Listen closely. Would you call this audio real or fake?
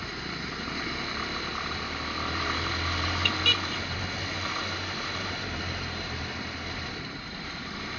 fake